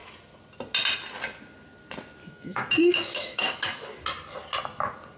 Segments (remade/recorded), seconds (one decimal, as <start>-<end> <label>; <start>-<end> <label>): 0.0-2.2 recorded; 2.2-4.0 remade; 4.0-5.2 recorded